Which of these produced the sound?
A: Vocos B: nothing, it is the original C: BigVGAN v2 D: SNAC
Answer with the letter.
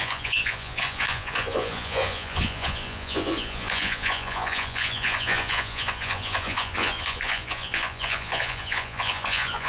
A